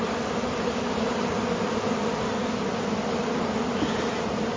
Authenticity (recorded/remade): recorded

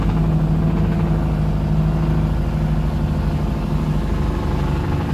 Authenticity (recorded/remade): recorded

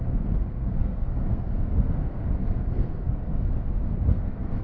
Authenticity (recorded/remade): remade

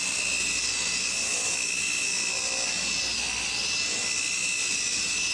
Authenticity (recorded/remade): recorded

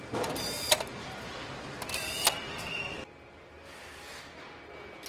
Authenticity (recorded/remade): recorded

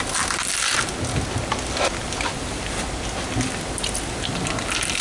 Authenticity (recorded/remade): recorded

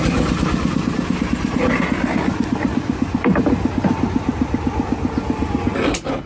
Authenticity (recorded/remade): recorded